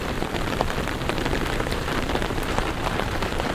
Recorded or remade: remade